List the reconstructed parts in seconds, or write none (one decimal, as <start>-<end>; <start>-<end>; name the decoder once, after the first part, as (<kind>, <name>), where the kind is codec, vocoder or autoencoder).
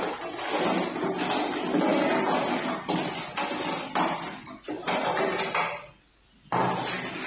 none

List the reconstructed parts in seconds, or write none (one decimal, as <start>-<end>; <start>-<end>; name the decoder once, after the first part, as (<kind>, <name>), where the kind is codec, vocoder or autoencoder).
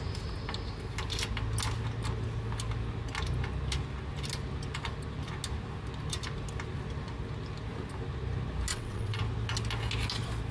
8.7-9.2 (vocoder, WaveNeXt)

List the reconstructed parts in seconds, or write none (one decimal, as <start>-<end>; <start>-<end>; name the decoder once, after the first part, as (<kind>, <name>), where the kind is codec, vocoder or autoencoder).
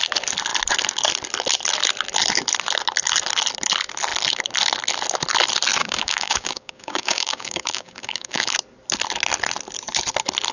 5.8-8.5 (codec, DAC)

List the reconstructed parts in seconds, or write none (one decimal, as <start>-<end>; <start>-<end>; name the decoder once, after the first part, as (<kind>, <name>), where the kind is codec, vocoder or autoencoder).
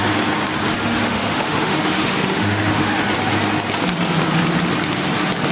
0.8-3.0 (autoencoder, DAC-VAE)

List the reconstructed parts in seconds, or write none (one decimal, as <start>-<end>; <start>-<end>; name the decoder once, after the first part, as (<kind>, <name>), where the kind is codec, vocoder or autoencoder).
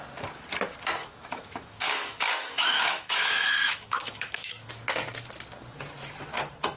1.0-4.7 (autoencoder, DAC-VAE)